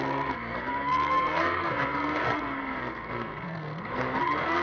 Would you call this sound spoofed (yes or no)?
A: yes